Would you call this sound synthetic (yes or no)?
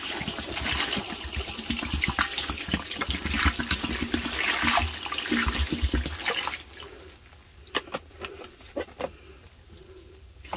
no